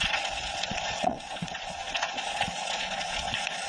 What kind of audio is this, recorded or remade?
remade